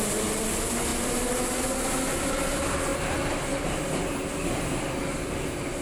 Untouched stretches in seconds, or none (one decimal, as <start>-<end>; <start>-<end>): 0.0-5.8